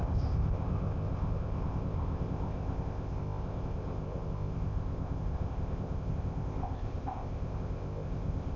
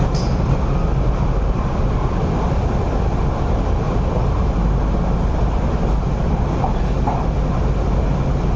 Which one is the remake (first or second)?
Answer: first